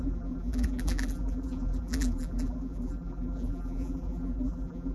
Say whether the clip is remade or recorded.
remade